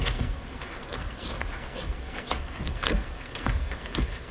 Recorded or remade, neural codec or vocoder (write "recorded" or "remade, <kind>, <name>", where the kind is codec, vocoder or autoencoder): remade, codec, SNAC